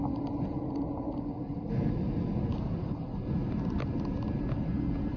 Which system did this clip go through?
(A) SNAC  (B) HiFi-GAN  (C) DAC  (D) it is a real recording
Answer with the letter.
D